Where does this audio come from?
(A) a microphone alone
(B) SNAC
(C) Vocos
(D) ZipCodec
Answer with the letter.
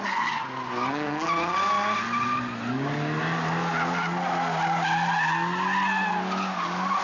A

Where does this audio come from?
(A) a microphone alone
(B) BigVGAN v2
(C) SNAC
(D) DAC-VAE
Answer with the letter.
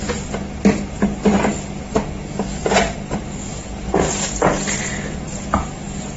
A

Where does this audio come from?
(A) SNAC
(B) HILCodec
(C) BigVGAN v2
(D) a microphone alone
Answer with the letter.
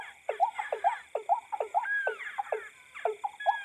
D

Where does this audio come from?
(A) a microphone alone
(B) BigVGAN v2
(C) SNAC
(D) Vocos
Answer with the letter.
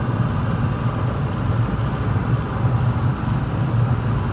A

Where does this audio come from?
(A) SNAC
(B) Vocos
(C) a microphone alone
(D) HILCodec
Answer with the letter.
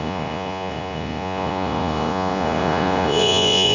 B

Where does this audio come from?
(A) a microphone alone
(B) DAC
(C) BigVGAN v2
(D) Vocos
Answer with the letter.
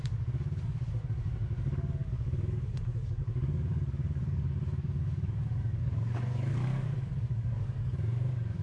B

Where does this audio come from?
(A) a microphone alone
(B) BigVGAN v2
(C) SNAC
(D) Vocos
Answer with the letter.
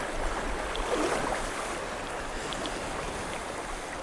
A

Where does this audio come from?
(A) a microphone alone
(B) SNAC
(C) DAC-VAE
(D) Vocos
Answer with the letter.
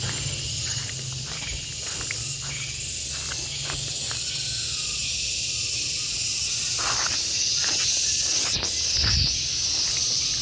A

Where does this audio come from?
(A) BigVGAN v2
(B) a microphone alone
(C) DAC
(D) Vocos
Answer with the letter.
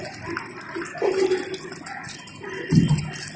B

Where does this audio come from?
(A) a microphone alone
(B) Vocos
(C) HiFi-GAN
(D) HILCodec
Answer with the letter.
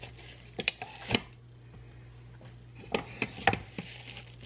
A